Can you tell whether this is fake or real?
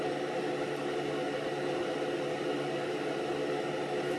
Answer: real